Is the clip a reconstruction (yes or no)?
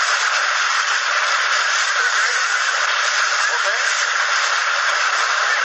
yes